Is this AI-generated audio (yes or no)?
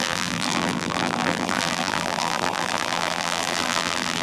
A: yes